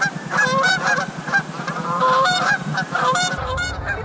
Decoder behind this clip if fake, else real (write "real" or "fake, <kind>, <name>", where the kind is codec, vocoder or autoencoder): fake, vocoder, BigVGAN v2